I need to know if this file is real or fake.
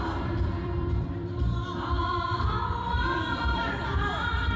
fake